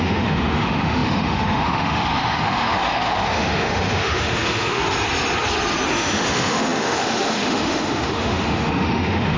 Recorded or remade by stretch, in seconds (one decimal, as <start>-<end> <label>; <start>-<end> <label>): 0.0-4.8 remade; 4.8-5.9 recorded; 5.9-9.4 remade